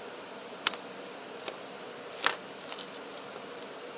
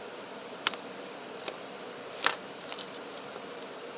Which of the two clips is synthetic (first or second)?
second